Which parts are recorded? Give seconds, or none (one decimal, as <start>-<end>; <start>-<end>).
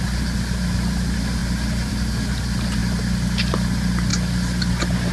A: 0.0-5.1